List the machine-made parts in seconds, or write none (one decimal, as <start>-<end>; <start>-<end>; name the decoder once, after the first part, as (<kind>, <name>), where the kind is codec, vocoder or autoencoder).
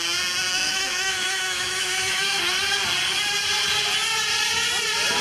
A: 0.5-2.4 (autoencoder, DAC-VAE)